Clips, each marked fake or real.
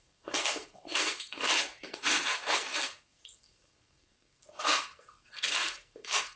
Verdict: fake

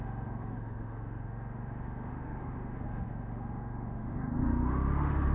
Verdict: fake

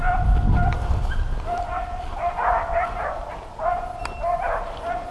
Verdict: real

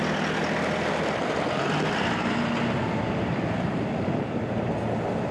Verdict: real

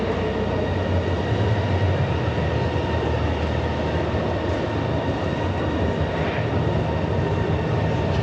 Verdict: real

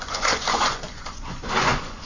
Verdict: fake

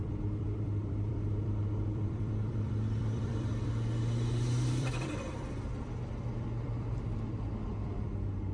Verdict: fake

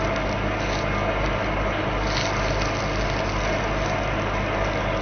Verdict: real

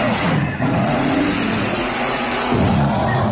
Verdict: fake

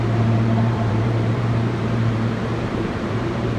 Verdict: fake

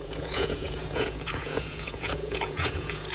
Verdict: fake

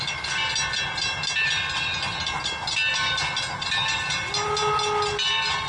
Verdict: real